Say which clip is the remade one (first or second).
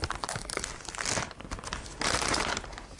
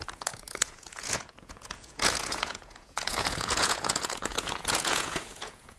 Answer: second